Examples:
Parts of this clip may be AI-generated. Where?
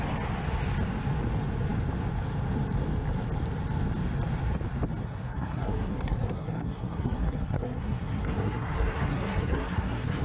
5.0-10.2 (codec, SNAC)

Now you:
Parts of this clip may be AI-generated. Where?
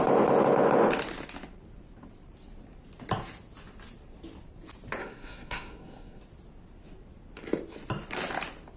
5.0-6.2 (codec, SNAC)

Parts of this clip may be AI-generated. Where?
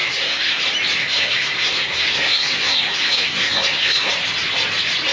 0.0-0.6 (codec, SNAC); 1.0-4.1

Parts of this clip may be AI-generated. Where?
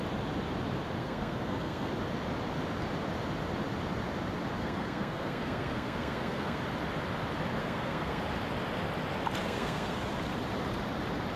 1.0-1.9 (codec, SNAC); 4.6-6.6; 7.6-8.2; 9.4-10.1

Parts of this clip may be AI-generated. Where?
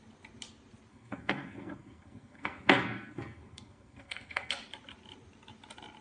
0.9-4.5 (codec, SNAC)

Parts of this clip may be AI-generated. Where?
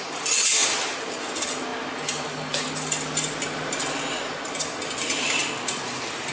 none